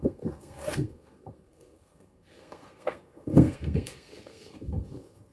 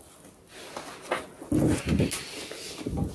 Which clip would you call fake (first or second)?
first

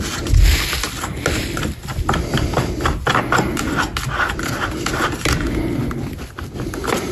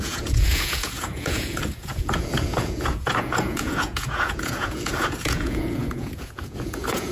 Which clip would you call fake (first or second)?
second